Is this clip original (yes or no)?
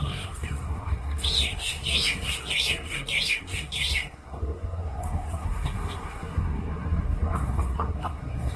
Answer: no